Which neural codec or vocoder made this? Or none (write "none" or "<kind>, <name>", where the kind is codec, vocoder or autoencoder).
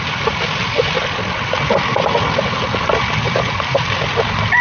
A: none